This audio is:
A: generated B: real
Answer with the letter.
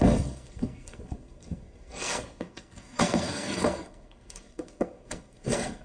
A